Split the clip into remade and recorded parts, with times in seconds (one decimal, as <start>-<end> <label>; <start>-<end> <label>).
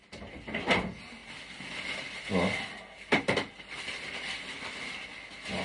0.0-5.6 recorded